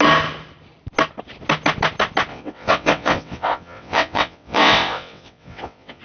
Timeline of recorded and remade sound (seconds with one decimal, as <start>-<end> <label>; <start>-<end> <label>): 0.0-2.3 recorded; 2.3-6.0 remade